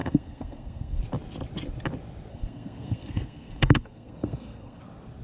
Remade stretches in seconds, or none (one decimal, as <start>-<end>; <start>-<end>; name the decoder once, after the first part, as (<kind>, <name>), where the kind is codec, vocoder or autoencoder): 0.0-1.0 (codec, SNAC); 2.3-4.8